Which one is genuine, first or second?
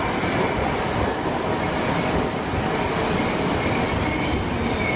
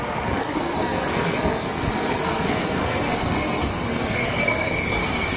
first